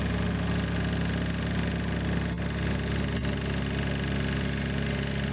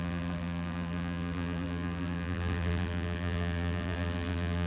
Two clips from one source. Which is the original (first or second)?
first